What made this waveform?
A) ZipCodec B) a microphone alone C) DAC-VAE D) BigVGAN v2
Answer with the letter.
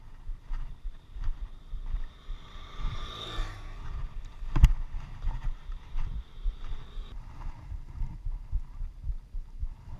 D